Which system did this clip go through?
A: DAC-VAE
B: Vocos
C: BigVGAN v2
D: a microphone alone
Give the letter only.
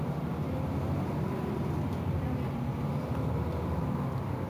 C